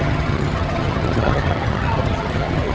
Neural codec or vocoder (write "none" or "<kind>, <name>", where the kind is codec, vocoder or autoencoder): vocoder, HiFi-GAN